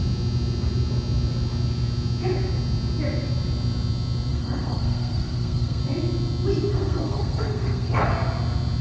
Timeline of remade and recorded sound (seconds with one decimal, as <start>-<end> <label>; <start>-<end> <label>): 0.0-4.3 recorded; 4.3-5.8 remade; 5.8-6.7 recorded; 6.7-8.1 remade; 8.1-8.8 recorded